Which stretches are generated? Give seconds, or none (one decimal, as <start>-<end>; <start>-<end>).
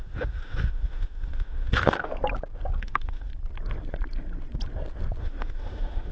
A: 0.0-2.1; 2.8-3.3; 5.2-6.1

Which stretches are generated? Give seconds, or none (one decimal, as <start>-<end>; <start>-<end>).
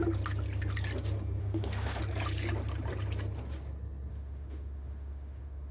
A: 1.4-2.0; 4.1-5.7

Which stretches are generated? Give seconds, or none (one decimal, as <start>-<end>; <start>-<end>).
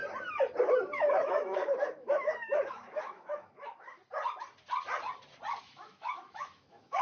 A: 0.6-4.0; 5.6-7.0